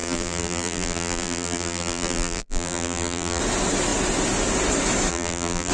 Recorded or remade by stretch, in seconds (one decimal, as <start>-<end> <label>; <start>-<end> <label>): 0.0-3.4 remade; 3.4-5.1 recorded; 5.1-5.7 remade